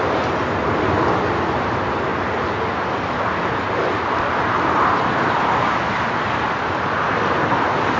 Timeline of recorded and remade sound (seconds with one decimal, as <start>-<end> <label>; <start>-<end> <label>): 0.0-8.0 recorded